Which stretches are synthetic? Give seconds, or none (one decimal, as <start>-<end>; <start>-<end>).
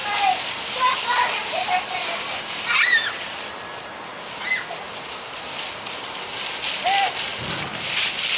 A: none